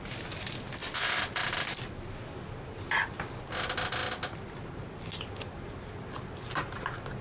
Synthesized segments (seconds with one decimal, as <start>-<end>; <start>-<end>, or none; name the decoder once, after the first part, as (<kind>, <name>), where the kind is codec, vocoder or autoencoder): none